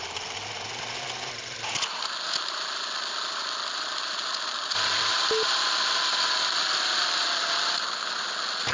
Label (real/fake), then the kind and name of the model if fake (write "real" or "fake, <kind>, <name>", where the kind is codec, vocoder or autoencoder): real